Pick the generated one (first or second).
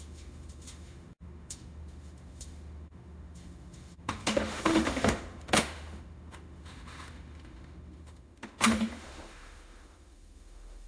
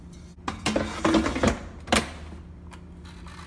first